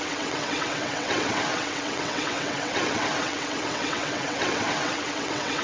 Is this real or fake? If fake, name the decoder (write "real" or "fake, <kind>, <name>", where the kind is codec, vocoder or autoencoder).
fake, vocoder, WaveNeXt